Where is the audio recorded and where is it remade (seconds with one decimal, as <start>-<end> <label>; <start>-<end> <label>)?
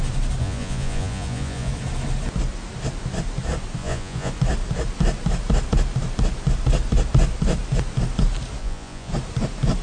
0.0-0.4 recorded; 0.4-1.7 remade; 1.7-3.8 recorded; 3.8-4.3 remade; 4.3-8.6 recorded; 8.6-9.1 remade; 9.1-9.8 recorded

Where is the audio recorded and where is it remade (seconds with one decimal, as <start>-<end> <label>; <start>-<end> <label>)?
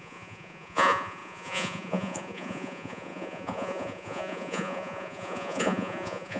0.0-6.4 remade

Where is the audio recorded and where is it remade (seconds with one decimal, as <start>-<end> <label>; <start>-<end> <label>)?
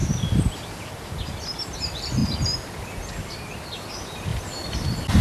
0.0-5.2 recorded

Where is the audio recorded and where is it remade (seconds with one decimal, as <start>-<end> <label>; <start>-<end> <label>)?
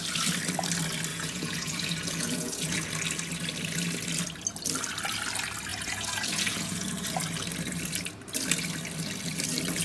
0.0-1.1 recorded; 1.1-2.9 remade; 2.9-5.7 recorded; 5.7-7.2 remade; 7.2-9.8 recorded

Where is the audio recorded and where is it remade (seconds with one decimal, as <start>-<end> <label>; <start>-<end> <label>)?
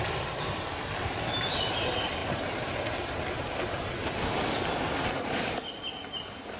0.0-6.6 recorded